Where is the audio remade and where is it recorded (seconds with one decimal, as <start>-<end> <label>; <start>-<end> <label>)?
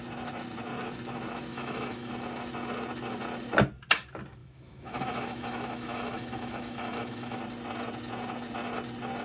0.0-1.5 recorded; 1.5-2.1 remade; 2.1-4.4 recorded; 4.4-7.4 remade; 7.4-9.2 recorded